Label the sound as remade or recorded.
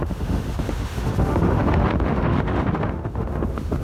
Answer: remade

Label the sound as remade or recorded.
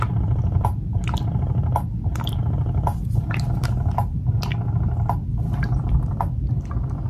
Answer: recorded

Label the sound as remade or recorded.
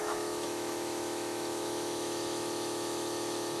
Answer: remade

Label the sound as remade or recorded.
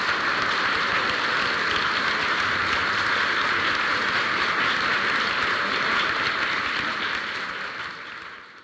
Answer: recorded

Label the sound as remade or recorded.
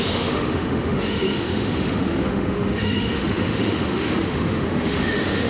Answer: remade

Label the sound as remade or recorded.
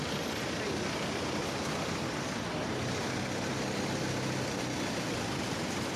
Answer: recorded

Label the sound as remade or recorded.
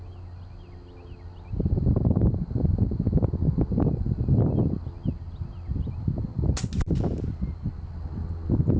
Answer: recorded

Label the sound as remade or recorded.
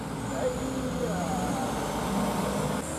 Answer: recorded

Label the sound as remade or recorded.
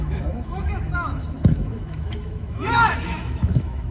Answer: remade